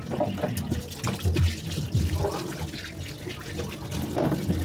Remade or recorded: recorded